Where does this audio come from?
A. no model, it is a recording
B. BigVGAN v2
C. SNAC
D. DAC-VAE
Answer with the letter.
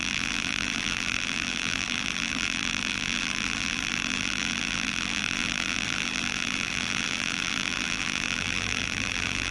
B